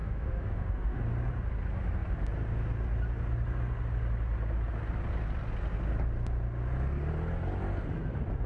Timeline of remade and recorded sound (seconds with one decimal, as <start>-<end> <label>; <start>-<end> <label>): 0.0-1.0 remade; 1.0-8.5 recorded